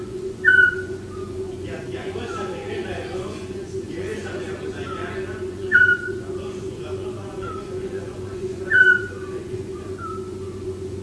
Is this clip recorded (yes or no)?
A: no